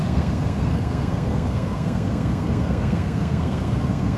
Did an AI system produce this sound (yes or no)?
yes